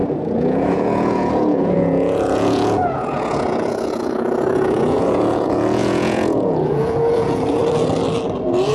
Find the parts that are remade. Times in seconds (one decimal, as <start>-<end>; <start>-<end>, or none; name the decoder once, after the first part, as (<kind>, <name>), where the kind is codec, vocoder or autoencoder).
0.0-7.6 (vocoder, Vocos)